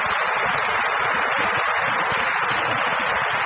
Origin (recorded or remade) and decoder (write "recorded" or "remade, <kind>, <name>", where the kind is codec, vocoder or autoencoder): recorded